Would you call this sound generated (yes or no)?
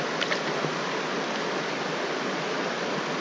no